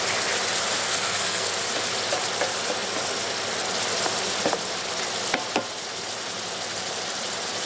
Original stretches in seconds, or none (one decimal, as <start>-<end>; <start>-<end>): 0.0-0.8; 1.5-7.7